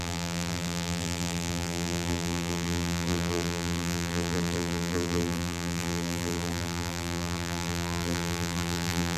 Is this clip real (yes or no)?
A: no